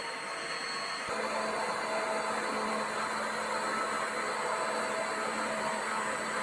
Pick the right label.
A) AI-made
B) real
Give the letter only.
B